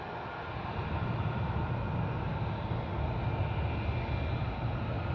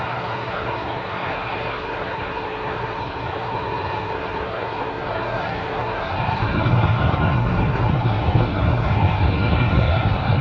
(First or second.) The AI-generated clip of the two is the second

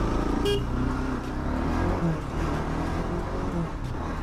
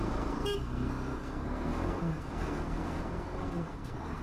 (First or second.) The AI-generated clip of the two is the second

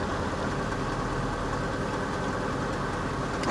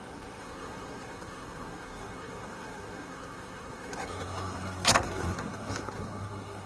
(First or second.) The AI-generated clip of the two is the second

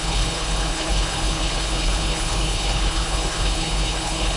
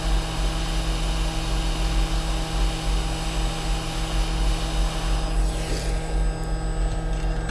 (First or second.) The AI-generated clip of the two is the first